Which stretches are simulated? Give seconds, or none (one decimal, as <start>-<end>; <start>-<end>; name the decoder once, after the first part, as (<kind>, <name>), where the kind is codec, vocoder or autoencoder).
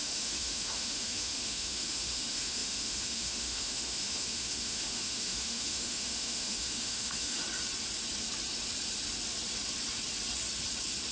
0.0-7.4 (autoencoder, DAC-VAE)